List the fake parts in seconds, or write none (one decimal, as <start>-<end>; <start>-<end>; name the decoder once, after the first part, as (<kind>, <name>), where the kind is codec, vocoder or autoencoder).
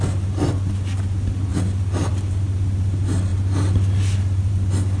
none